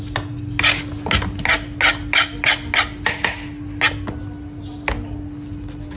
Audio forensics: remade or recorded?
recorded